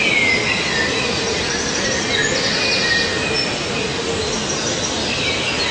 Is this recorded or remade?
recorded